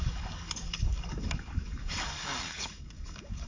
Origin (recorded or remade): remade